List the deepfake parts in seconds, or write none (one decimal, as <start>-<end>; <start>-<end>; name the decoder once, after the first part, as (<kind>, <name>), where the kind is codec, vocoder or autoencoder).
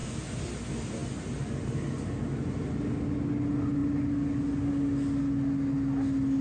none